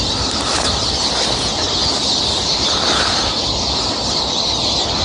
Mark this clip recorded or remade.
recorded